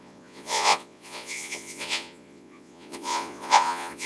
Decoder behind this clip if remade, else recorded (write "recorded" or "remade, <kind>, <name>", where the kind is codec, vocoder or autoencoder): remade, vocoder, Vocos